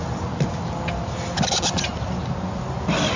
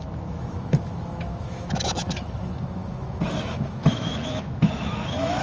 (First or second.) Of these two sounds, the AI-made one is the second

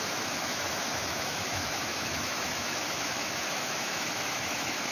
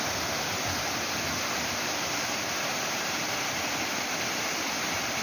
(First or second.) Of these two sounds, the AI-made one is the first